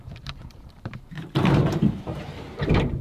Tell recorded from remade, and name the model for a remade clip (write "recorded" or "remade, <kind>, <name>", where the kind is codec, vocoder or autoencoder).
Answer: remade, vocoder, BigVGAN v2